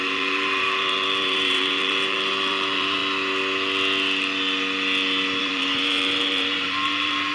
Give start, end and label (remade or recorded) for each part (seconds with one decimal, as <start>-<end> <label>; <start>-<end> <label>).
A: 0.0-3.0 remade; 3.0-5.4 recorded; 5.4-7.3 remade